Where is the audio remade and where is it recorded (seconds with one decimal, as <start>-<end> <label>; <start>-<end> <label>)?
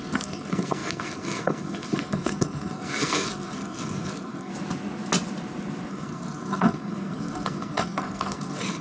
0.0-4.5 remade; 4.5-5.9 recorded; 5.9-8.8 remade